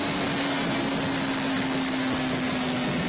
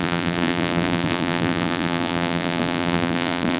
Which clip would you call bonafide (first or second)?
first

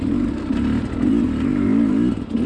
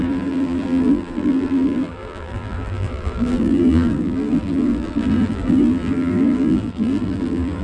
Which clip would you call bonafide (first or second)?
first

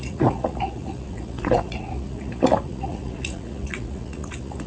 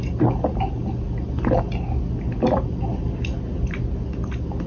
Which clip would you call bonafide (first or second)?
second